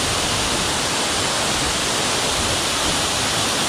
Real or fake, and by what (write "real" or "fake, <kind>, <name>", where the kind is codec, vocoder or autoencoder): real